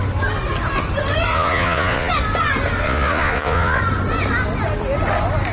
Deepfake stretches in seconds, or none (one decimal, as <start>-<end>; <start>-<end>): 1.3-2.1; 2.8-3.8